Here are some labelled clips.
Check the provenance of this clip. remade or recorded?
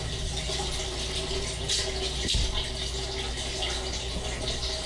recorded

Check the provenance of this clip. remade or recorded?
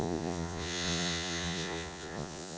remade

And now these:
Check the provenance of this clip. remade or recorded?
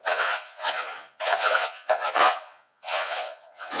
remade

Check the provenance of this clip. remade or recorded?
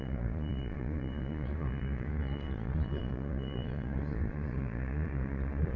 remade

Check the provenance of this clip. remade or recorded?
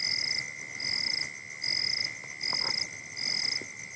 recorded